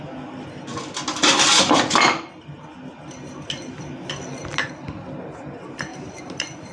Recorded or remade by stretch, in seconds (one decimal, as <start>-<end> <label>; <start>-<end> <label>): 0.0-5.9 recorded; 5.9-6.7 remade